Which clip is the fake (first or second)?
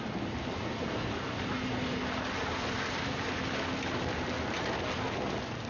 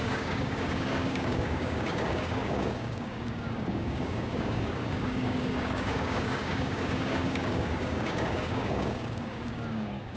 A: second